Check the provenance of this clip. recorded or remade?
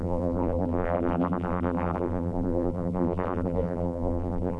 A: remade